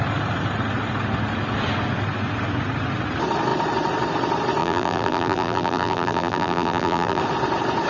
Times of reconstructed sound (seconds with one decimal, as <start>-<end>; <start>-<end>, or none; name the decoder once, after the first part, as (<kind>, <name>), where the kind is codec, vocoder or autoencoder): 4.6-7.2 (vocoder, BigVGAN v2)

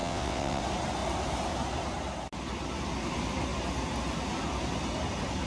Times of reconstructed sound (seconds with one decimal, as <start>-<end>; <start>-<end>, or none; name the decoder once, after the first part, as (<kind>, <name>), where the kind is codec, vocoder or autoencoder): 0.0-0.6 (vocoder, WaveNeXt)

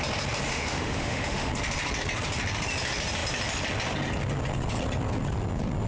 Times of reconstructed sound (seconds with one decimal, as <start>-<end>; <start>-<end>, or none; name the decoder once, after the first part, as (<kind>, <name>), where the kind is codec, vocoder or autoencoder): 0.5-1.5 (autoencoder, DAC-VAE)

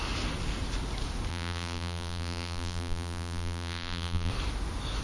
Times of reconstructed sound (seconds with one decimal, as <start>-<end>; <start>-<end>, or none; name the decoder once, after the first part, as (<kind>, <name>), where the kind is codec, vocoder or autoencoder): 1.3-4.3 (vocoder, BigVGAN v2)

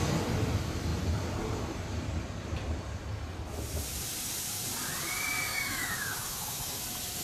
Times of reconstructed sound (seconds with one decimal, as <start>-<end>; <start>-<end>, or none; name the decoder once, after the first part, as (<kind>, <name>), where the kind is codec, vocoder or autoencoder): 5.5-6.8 (autoencoder, DAC-VAE)

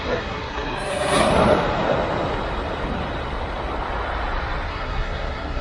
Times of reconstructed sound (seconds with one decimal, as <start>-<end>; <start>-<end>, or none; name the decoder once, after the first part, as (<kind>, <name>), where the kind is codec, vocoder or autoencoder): 0.0-1.3 (codec, SNAC); 4.7-5.6

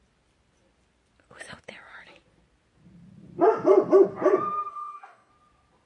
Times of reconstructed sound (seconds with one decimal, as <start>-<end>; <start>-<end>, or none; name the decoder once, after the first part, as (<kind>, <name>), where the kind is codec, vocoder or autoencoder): 4.7-5.3 (codec, DAC)

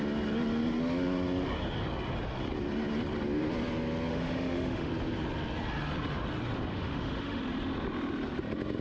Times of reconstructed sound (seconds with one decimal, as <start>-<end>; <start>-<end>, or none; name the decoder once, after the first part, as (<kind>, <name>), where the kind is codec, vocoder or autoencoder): 4.1-4.9 (autoencoder, DAC-VAE); 6.7-7.4